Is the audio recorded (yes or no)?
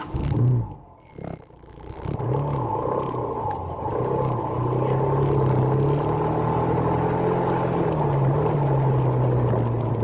yes